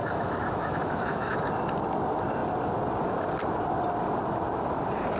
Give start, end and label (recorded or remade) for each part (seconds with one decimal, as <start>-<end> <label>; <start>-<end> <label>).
0.0-1.4 remade; 1.4-5.2 recorded